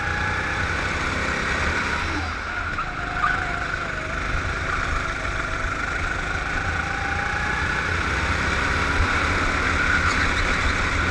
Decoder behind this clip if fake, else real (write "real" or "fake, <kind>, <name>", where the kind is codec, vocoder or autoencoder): real